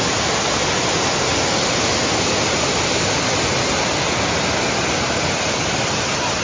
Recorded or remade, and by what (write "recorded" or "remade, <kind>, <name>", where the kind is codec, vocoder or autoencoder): recorded